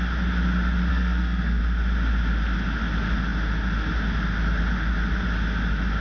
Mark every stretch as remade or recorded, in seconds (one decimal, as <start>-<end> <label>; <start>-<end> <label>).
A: 0.0-0.9 recorded; 0.9-1.6 remade; 1.6-6.0 recorded